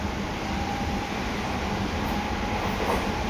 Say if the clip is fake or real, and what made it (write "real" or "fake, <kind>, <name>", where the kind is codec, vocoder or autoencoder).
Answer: real